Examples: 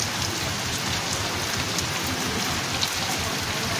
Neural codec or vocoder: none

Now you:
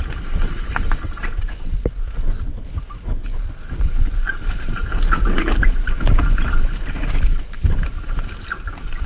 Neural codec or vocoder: none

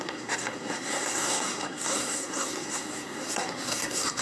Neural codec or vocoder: codec, SNAC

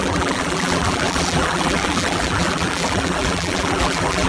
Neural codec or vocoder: vocoder, BigVGAN v2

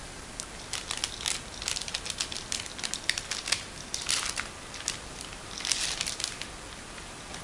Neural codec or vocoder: none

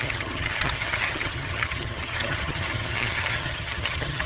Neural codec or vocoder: vocoder, HiFi-GAN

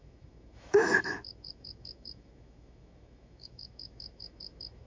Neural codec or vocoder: autoencoder, DAC-VAE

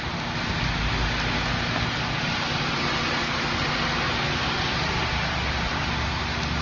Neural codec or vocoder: none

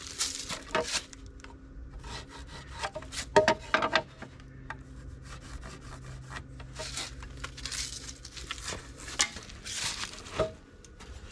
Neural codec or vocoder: none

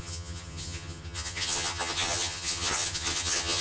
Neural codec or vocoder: vocoder, HiFi-GAN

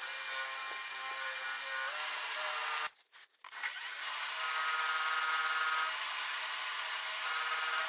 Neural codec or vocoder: none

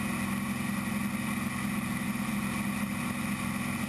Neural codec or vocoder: none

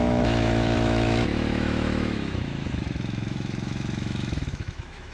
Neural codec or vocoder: autoencoder, DAC-VAE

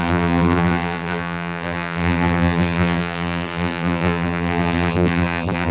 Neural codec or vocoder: vocoder, BigVGAN v2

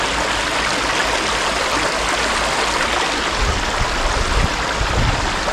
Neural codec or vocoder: none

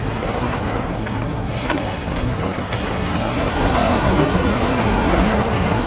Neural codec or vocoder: codec, SNAC